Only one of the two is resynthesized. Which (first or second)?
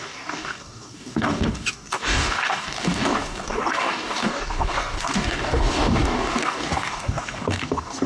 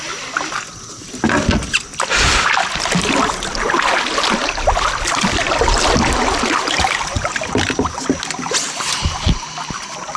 first